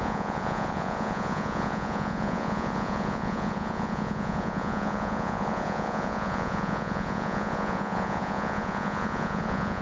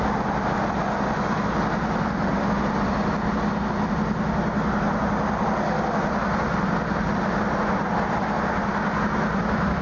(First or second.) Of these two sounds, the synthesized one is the first